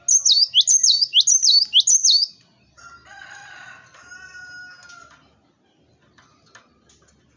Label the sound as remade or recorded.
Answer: recorded